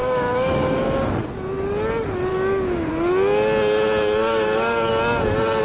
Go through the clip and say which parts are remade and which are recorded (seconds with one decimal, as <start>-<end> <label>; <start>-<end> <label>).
0.0-1.1 remade; 1.1-2.3 recorded; 2.3-2.9 remade; 2.9-4.2 recorded; 4.2-4.9 remade; 4.9-5.6 recorded